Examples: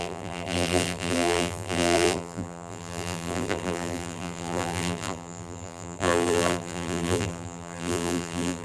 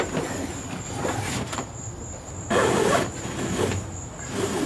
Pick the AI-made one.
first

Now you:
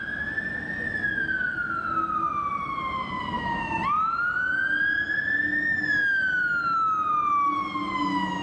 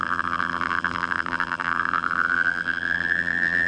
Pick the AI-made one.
second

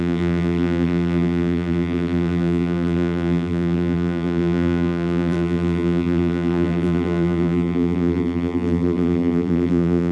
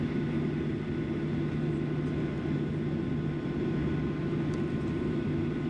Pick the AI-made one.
first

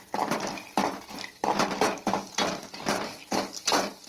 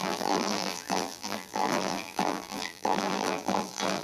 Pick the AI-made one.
second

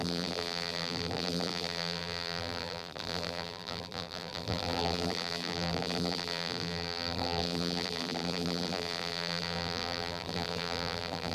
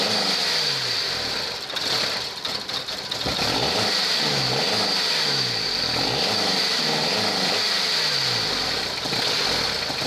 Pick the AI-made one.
first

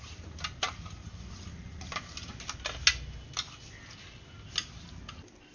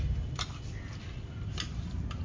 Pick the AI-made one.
second